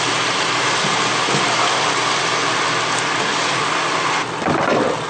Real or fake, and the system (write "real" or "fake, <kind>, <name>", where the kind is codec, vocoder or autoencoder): real